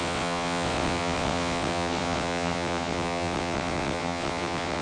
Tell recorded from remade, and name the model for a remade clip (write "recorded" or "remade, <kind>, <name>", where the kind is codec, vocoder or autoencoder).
remade, vocoder, WaveNeXt